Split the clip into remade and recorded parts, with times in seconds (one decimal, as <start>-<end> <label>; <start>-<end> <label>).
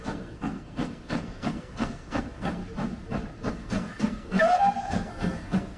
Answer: 0.0-2.6 remade; 2.6-3.5 recorded; 3.5-5.8 remade